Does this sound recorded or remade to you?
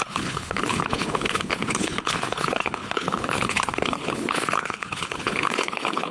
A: remade